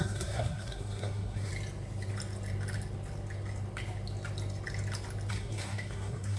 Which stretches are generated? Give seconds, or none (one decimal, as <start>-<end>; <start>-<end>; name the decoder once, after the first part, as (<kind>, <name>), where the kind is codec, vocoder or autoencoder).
0.0-1.5 (codec, SNAC); 5.3-6.4